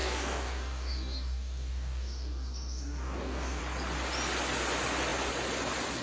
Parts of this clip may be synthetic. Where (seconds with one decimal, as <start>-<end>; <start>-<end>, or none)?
0.0-3.6